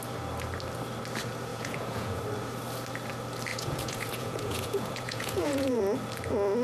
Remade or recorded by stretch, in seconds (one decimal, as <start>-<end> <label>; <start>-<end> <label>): 0.0-1.5 recorded; 1.5-2.2 remade; 2.2-3.5 recorded; 3.5-5.8 remade; 5.8-6.6 recorded